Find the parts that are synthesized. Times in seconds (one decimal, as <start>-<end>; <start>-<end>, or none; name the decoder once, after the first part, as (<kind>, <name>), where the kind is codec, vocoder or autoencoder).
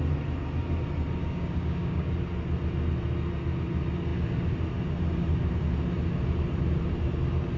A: 1.2-2.2 (codec, DAC)